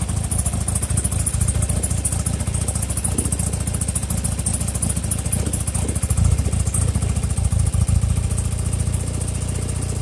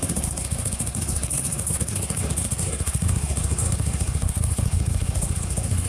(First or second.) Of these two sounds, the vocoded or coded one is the second